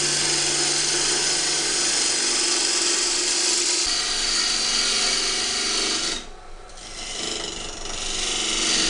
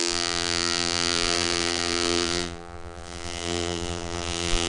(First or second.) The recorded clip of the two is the first